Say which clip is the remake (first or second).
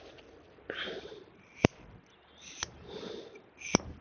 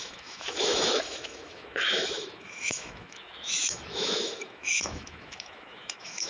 second